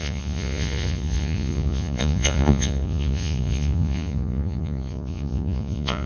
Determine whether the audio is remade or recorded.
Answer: remade